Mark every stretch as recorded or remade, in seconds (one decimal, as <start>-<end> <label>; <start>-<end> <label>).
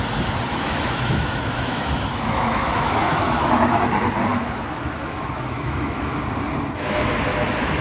0.0-0.5 recorded; 0.5-3.8 remade; 3.8-4.3 recorded; 4.3-6.2 remade; 6.2-7.3 recorded; 7.3-7.8 remade